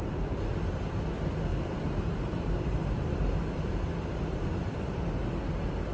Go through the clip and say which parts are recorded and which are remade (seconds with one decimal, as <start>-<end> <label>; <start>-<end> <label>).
0.0-1.5 recorded; 1.5-5.0 remade; 5.0-5.9 recorded